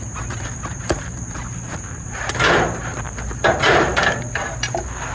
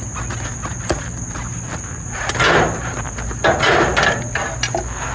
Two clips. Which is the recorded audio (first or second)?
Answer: second